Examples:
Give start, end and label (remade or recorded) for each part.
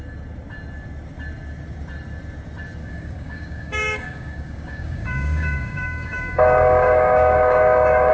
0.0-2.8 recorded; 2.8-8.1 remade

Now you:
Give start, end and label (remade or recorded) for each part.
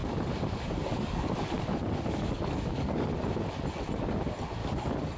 0.0-3.1 remade; 3.1-4.6 recorded; 4.6-5.2 remade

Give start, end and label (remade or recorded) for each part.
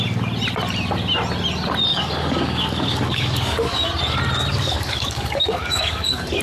0.0-1.9 recorded; 1.9-3.9 remade; 3.9-4.5 recorded; 4.5-6.4 remade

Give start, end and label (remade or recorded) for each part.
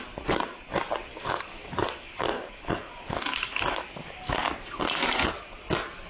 0.0-1.1 recorded; 1.1-4.8 remade; 4.8-6.1 recorded